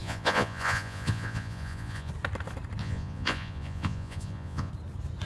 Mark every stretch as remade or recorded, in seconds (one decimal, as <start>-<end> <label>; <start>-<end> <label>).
0.0-2.1 remade; 2.1-2.8 recorded; 2.8-4.7 remade; 4.7-5.3 recorded